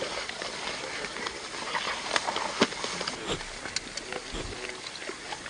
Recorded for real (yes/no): yes